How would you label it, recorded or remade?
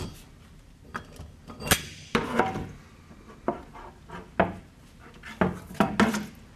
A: recorded